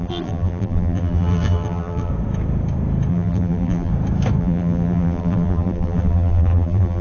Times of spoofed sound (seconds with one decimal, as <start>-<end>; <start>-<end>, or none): 0.0-2.1; 3.1-3.9; 4.4-7.0